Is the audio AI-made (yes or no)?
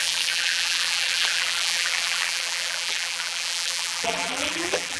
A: yes